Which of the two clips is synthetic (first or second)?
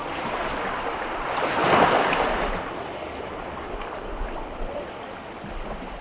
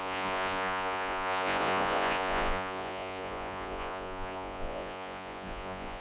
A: second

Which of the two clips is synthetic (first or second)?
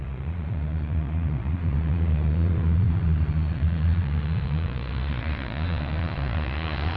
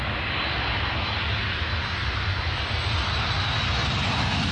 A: first